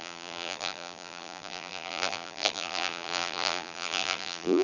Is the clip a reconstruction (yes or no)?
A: yes